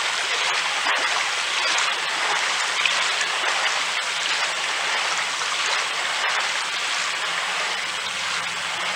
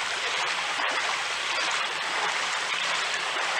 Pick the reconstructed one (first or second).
second